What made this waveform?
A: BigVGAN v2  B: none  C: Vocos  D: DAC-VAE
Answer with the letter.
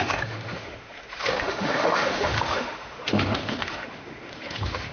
D